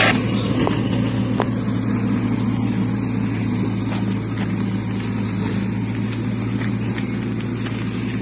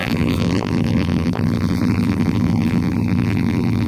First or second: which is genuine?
first